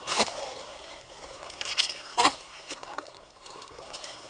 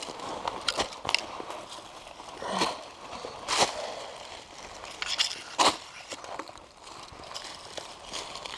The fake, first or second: first